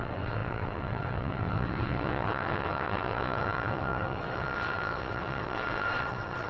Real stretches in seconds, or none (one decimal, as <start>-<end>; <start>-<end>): none